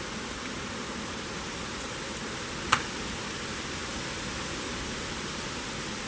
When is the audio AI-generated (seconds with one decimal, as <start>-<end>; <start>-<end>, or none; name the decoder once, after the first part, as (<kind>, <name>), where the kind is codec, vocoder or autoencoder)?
none

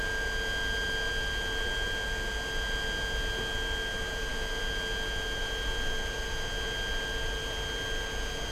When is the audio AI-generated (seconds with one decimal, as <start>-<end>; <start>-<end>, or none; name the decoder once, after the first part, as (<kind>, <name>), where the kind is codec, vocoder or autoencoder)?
none

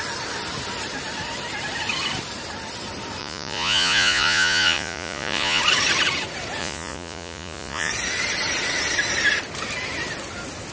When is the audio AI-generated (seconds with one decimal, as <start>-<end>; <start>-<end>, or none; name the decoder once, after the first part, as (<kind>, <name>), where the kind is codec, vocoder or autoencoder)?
3.2-5.6 (vocoder, Vocos); 6.6-7.9

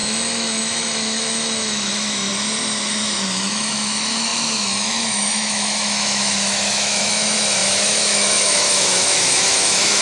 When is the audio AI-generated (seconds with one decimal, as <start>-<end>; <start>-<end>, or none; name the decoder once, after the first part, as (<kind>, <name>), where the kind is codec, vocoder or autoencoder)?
0.0-2.3 (autoencoder, DAC-VAE); 2.9-10.0

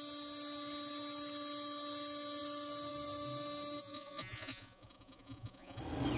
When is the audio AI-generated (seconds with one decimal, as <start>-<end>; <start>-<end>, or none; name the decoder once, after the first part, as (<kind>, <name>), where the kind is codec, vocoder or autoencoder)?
3.8-5.8 (vocoder, Vocos)